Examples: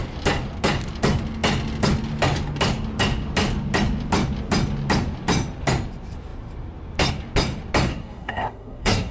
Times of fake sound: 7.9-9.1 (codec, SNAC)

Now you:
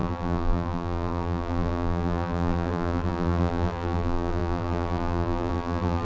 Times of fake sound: 0.0-6.0 (vocoder, BigVGAN v2)

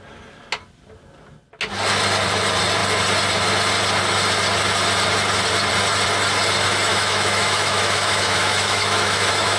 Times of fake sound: 6.9-9.6 (autoencoder, DAC-VAE)

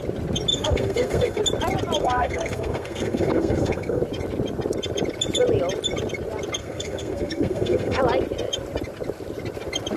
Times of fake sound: 0.5-1.4 (codec, SNAC); 2.0-4.0; 6.6-8.0

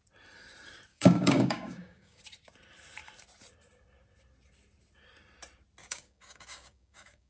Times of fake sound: 0.9-2.2 (codec, DAC); 5.8-7.3